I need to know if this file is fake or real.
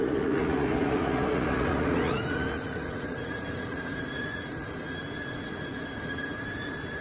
fake